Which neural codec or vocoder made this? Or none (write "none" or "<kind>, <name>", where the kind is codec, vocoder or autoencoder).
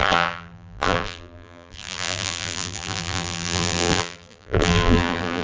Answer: vocoder, BigVGAN v2